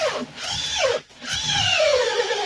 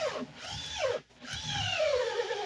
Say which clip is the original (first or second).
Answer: second